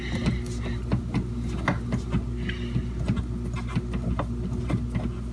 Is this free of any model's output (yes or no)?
yes